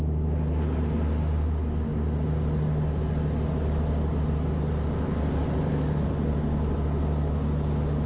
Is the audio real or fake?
real